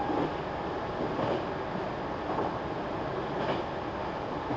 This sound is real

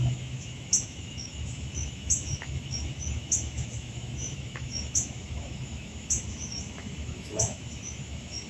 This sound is fake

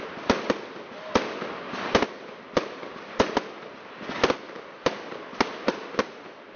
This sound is real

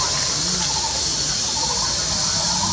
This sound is real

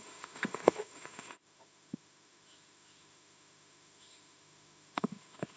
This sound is fake